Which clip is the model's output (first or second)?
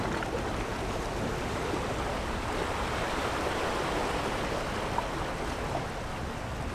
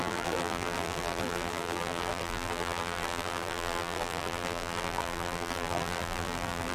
second